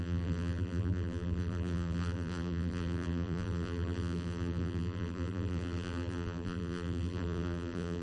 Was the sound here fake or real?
fake